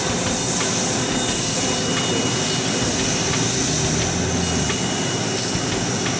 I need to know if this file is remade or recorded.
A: recorded